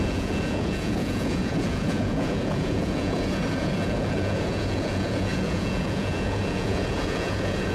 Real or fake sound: fake